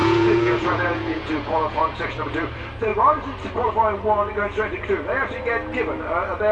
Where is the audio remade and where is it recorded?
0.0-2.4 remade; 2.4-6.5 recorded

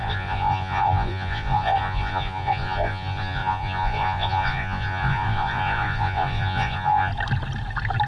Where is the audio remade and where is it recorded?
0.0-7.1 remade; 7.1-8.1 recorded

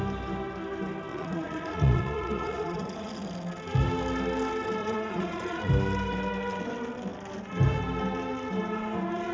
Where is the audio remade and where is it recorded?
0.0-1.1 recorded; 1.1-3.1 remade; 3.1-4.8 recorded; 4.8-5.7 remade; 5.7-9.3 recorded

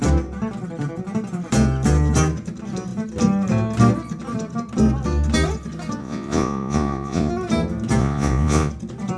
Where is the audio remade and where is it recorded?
0.0-6.0 recorded; 6.0-7.3 remade; 7.3-8.0 recorded; 8.0-8.7 remade; 8.7-9.2 recorded

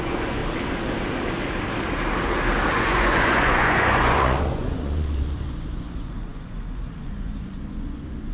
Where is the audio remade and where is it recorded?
0.0-0.4 remade; 0.4-2.7 recorded; 2.7-8.3 remade